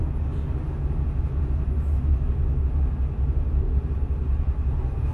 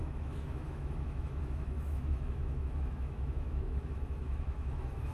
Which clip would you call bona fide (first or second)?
first